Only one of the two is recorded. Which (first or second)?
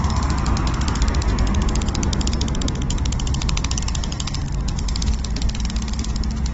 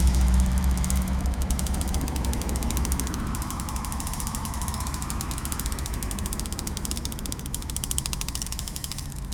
first